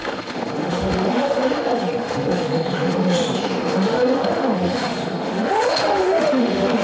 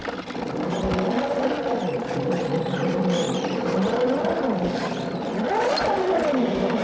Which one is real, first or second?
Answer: second